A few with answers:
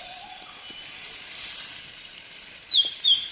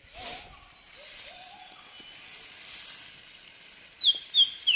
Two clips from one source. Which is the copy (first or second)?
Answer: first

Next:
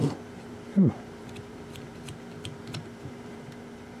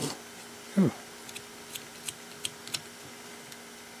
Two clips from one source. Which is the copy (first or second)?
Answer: first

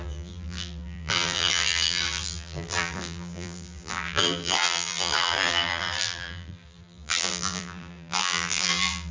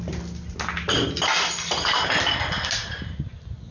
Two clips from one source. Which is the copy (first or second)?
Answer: first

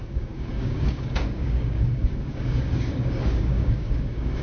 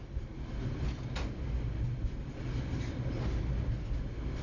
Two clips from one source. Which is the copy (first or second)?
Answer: first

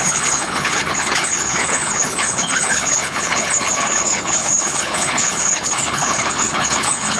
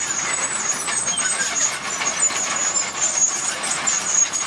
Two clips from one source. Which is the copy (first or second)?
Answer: first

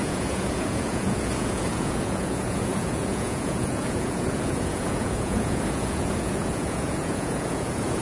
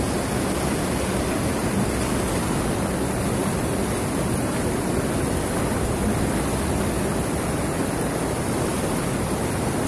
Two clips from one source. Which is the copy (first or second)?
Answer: first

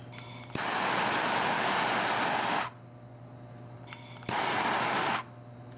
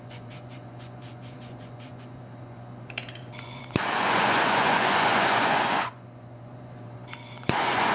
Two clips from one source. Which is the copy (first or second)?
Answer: second